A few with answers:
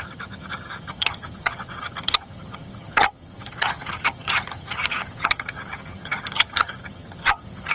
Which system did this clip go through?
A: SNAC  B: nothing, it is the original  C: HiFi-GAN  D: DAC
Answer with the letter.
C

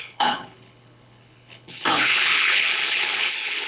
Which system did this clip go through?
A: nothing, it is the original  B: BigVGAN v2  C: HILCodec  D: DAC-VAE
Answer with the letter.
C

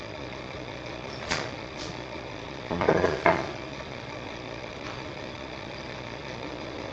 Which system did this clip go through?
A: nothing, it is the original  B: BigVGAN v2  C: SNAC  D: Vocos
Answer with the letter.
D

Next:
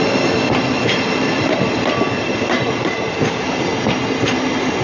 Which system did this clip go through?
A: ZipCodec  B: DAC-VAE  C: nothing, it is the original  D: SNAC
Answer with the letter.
C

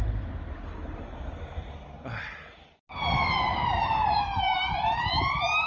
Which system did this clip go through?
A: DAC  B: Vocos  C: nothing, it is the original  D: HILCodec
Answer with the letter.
C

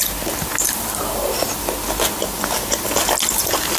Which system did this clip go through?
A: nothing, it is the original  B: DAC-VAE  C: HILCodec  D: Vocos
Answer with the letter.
A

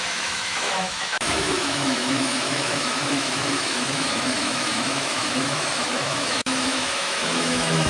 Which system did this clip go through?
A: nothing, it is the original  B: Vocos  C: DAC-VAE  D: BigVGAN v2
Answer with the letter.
C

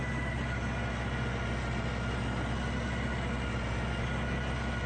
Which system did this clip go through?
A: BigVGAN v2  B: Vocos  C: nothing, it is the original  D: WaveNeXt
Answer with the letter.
C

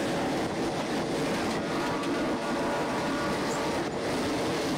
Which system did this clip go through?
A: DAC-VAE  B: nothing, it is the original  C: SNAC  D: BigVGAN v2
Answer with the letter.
B